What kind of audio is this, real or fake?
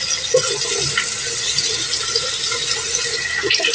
real